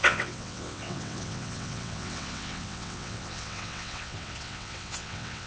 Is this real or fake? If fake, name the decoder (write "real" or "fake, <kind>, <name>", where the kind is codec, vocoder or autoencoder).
fake, vocoder, WaveNeXt